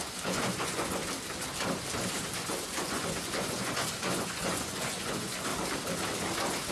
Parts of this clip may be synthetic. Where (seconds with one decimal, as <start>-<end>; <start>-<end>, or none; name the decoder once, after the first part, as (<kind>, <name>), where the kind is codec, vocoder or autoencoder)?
0.0-1.0 (vocoder, Vocos); 2.4-5.5